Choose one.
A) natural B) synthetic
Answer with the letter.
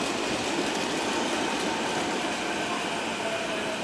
A